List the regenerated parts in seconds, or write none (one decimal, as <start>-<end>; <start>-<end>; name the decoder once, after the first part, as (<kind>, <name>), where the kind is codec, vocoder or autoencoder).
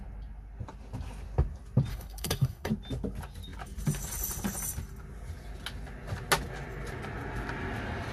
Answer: 1.9-2.7 (codec, SNAC)